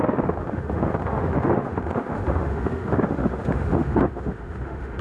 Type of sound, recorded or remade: remade